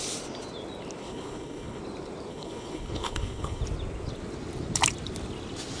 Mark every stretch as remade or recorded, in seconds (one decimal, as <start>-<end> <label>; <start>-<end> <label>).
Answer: 0.0-1.0 recorded; 1.0-1.8 remade; 1.8-2.3 recorded; 2.3-3.6 remade; 3.6-5.8 recorded